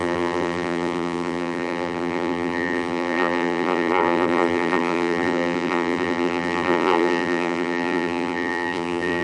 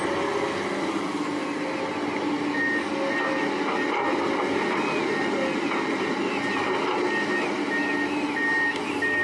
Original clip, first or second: second